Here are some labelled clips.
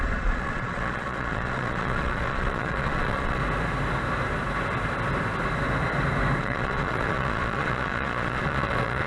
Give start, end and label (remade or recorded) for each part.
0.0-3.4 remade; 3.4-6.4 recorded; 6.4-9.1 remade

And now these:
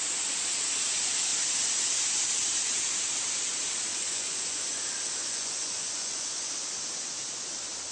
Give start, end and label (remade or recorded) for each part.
0.0-3.9 recorded; 3.9-4.8 remade; 4.8-5.2 recorded; 5.2-6.5 remade; 6.5-7.9 recorded